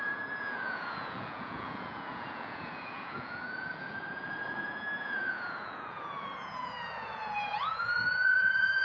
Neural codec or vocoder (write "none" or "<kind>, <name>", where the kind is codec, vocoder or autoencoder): vocoder, Vocos